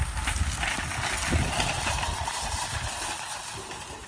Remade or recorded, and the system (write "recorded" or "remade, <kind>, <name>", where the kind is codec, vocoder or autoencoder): recorded